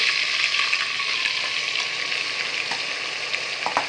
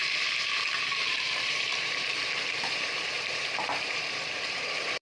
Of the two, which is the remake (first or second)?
second